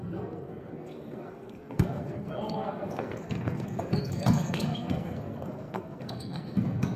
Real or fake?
fake